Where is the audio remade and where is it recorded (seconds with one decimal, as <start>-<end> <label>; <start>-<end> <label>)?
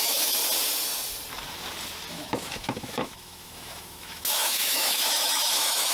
0.0-0.4 remade; 0.4-2.1 recorded; 2.1-5.9 remade